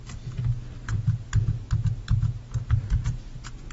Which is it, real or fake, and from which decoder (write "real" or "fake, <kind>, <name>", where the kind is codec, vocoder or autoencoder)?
real